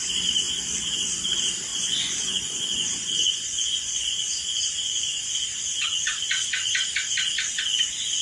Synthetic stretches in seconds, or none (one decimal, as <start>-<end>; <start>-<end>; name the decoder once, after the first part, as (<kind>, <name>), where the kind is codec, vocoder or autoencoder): 1.7-5.3 (vocoder, Vocos)